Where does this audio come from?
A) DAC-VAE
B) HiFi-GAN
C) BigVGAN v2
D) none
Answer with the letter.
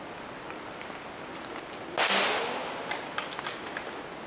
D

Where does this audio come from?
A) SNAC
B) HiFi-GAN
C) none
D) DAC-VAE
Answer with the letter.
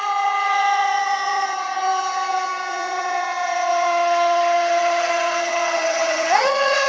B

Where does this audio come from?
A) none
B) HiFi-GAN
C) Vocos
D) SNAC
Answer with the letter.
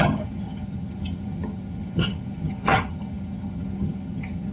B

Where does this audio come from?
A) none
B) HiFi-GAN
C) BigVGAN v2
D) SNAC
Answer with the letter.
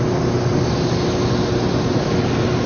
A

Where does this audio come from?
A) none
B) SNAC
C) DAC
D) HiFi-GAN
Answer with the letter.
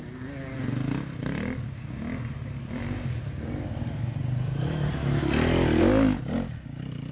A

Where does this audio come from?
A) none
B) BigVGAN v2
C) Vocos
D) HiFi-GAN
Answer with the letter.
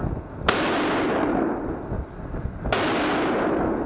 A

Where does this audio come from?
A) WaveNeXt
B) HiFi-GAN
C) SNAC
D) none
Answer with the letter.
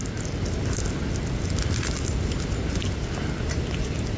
D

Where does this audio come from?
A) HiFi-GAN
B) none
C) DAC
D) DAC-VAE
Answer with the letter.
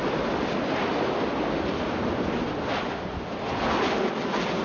B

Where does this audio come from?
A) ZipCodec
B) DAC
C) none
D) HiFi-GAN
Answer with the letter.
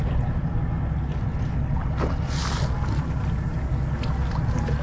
C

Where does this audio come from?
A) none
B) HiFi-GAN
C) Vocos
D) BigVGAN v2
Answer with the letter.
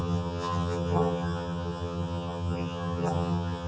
B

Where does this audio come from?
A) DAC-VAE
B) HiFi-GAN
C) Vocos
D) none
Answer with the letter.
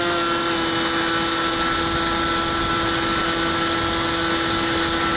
D